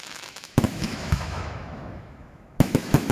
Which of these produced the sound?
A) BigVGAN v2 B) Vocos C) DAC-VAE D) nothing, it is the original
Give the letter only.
C